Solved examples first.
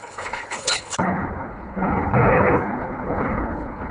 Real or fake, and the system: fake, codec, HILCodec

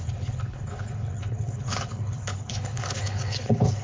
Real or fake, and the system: fake, codec, HILCodec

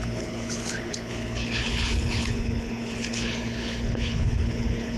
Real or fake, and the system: fake, codec, HILCodec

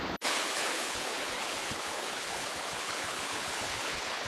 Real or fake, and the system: fake, codec, HILCodec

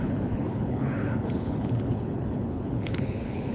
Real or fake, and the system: fake, codec, HILCodec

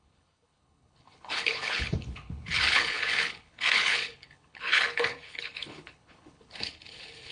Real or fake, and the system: fake, codec, HILCodec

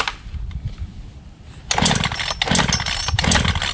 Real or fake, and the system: real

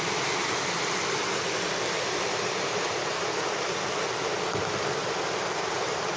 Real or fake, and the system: real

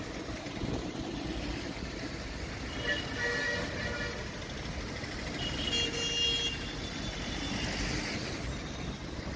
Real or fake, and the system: real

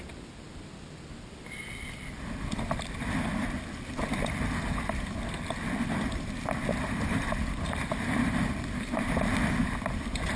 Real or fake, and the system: real